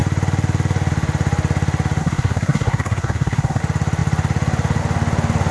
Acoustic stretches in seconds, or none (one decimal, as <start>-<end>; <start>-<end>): 0.0-2.0; 3.6-5.5